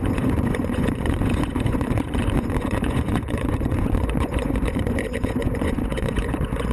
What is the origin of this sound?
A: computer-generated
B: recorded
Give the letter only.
A